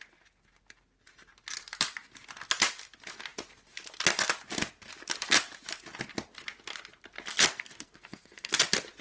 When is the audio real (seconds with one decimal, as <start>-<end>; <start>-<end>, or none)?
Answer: 0.0-7.5; 8.5-9.0